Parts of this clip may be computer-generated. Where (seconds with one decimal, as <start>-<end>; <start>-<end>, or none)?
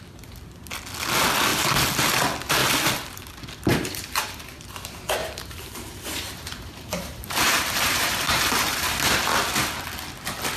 2.6-3.3; 3.7-4.6; 5.2-9.0